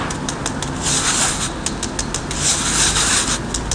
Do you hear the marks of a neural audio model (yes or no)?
no